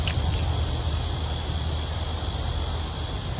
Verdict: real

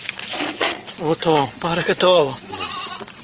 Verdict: fake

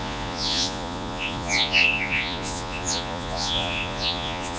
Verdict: fake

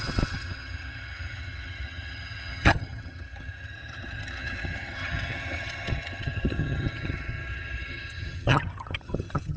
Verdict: fake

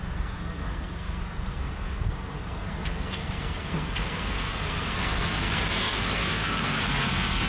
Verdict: fake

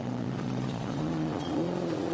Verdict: fake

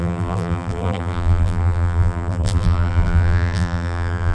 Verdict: fake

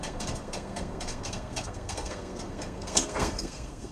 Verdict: fake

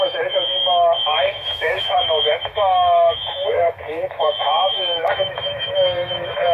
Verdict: fake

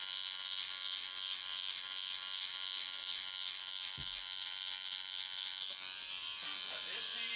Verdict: fake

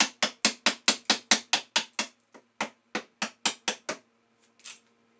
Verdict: real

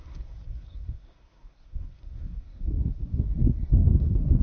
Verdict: fake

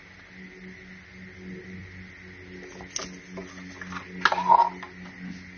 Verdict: real